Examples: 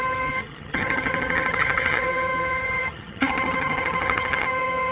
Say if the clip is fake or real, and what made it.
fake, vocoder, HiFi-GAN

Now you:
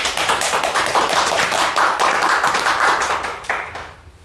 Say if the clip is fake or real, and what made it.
fake, vocoder, BigVGAN v2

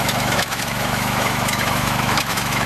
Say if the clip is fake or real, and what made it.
fake, autoencoder, DAC-VAE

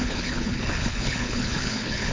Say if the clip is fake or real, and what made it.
fake, codec, HILCodec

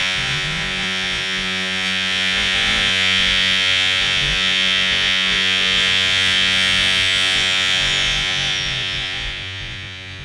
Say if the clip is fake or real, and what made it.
fake, vocoder, Vocos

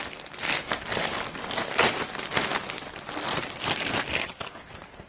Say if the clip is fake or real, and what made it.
real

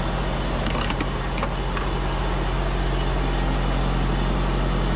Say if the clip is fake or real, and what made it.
real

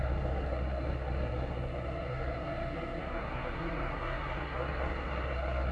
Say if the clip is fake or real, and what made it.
fake, codec, SNAC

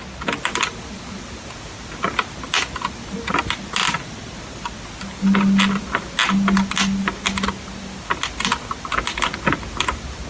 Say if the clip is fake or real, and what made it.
real